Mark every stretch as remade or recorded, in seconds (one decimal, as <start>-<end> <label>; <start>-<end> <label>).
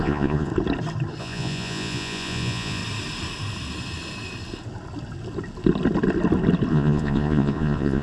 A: 0.0-0.5 remade; 0.5-1.2 recorded; 1.2-2.8 remade; 2.8-6.7 recorded; 6.7-8.0 remade